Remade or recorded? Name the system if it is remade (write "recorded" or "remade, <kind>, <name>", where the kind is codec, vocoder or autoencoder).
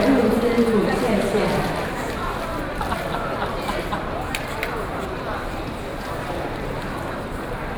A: remade, vocoder, BigVGAN v2